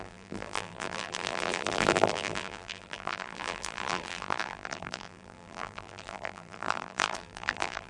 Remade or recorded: remade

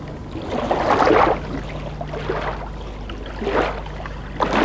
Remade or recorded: recorded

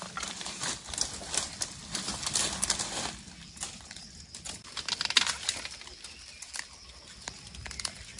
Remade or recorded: recorded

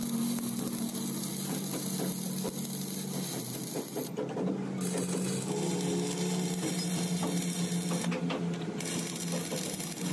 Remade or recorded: recorded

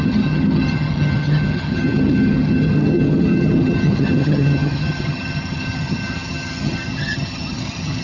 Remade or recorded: remade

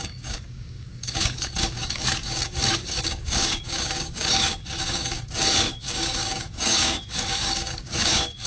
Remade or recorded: remade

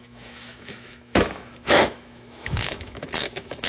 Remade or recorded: remade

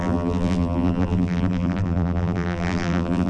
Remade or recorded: remade